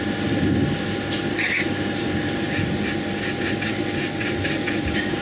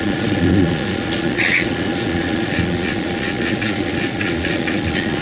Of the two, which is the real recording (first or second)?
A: first